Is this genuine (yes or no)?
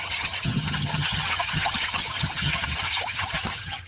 no